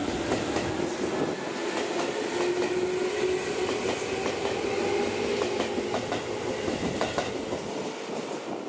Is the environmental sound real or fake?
real